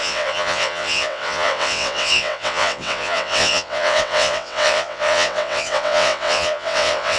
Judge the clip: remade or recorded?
remade